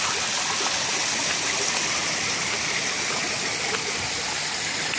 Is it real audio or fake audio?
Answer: real